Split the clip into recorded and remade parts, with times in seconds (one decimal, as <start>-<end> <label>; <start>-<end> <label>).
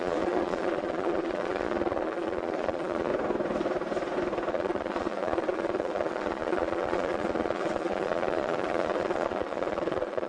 0.0-3.1 remade; 3.1-4.5 recorded; 4.5-10.3 remade